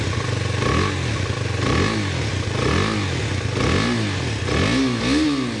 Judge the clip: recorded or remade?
recorded